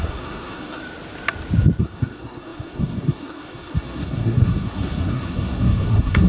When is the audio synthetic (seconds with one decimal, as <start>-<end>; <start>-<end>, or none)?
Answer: 0.0-0.8; 1.8-6.3